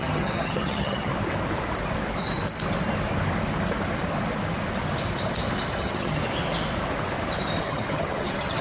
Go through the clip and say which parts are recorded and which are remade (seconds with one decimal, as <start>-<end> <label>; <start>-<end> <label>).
0.0-1.1 remade; 1.1-5.8 recorded; 5.8-6.2 remade; 6.2-7.6 recorded; 7.6-8.6 remade